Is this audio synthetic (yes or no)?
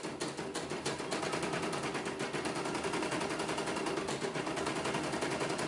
no